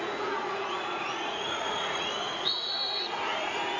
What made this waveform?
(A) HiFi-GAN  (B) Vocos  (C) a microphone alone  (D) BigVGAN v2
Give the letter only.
B